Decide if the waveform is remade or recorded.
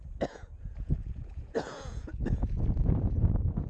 remade